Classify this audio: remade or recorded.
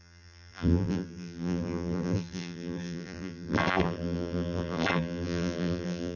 remade